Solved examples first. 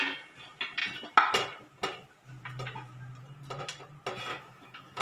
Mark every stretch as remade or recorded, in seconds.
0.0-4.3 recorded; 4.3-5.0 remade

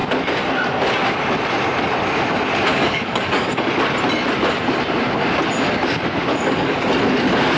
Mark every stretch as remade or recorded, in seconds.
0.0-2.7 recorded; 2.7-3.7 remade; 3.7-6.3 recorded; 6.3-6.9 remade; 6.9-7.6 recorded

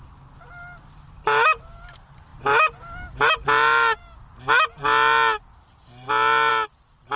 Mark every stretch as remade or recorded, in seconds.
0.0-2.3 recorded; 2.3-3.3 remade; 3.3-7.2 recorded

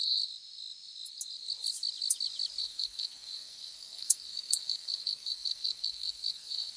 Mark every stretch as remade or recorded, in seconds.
0.0-2.6 recorded; 2.6-6.8 remade

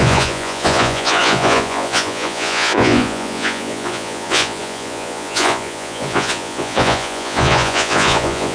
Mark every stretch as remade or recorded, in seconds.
0.0-8.5 remade

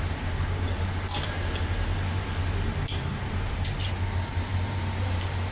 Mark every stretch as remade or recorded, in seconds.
0.0-3.1 recorded; 3.1-3.9 remade; 3.9-4.3 recorded; 4.3-5.5 remade

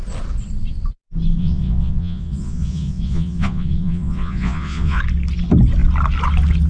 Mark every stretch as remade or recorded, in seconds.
0.0-1.4 recorded; 1.4-5.0 remade; 5.0-6.7 recorded